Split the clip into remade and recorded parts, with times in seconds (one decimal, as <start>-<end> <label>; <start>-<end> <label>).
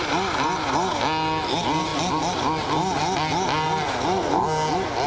0.0-5.1 recorded